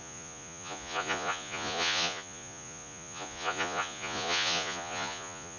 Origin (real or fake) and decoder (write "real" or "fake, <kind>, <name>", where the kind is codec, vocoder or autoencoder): fake, vocoder, Vocos